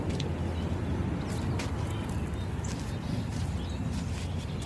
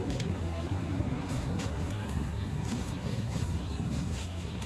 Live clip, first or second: first